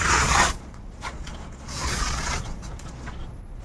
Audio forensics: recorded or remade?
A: remade